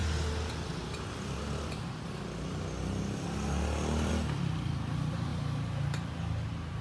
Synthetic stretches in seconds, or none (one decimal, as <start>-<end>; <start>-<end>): none